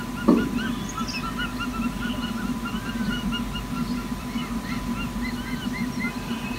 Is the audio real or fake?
real